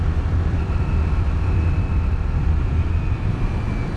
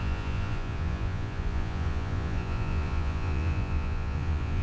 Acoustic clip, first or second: first